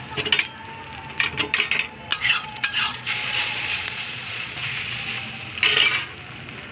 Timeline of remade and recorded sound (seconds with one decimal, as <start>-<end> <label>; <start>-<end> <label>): 0.0-2.1 recorded; 2.1-5.2 remade; 5.2-6.7 recorded